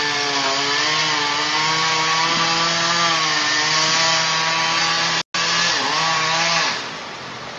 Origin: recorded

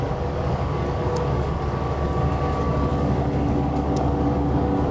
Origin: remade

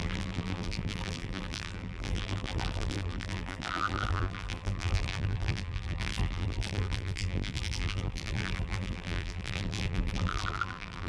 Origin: remade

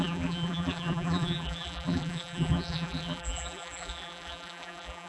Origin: remade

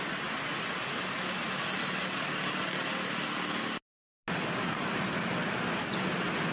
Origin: recorded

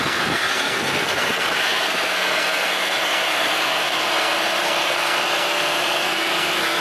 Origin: remade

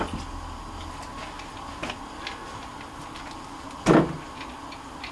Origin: recorded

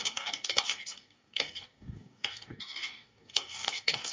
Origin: remade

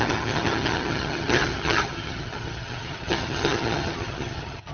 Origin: remade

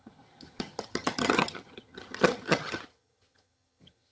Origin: remade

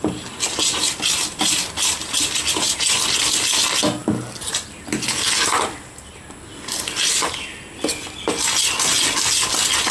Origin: recorded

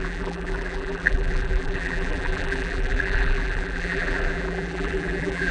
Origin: remade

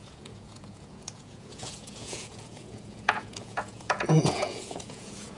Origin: remade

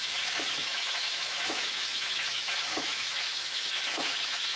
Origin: remade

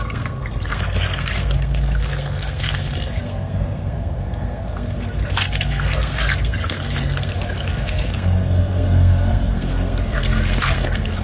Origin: remade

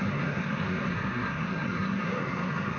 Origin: remade